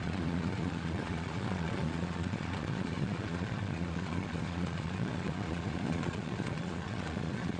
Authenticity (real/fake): fake